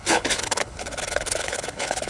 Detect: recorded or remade remade